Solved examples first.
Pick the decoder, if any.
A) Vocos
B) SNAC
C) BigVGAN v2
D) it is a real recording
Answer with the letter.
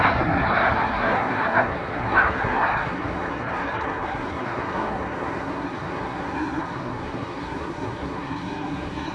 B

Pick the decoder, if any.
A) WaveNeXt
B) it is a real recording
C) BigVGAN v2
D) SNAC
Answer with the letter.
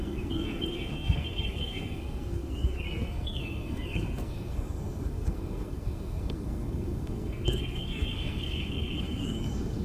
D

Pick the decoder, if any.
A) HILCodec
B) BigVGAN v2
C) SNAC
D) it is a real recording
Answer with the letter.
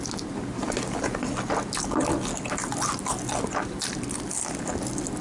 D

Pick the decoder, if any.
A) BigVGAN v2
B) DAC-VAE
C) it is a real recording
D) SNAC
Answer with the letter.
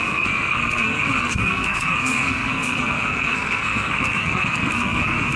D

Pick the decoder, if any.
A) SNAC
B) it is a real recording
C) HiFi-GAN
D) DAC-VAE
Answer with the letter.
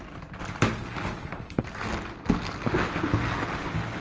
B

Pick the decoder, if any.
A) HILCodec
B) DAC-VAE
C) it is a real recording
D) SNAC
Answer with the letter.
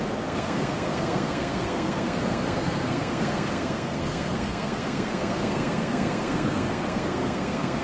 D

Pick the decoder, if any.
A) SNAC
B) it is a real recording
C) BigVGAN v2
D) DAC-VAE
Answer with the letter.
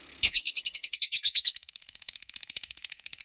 A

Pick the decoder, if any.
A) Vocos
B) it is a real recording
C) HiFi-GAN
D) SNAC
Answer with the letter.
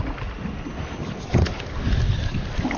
B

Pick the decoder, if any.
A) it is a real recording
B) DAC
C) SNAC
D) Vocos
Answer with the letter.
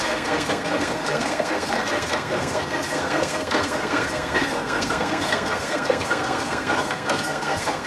C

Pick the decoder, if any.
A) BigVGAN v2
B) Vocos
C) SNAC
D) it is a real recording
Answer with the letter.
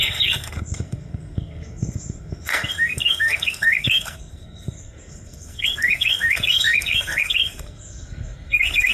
C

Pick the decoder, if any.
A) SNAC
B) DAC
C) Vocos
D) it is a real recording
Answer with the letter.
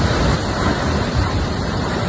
D